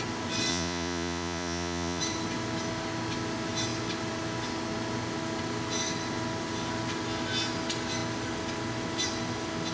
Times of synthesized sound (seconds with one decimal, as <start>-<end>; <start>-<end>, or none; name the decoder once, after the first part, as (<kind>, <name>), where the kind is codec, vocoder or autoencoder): 0.5-2.0 (vocoder, Vocos)